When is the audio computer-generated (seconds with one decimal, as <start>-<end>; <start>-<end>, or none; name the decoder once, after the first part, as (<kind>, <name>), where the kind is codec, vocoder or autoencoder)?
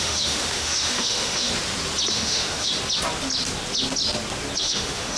0.0-1.5 (autoencoder, DAC-VAE); 2.1-2.7; 4.6-5.2